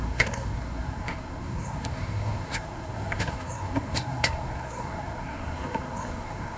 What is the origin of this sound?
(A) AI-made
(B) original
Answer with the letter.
A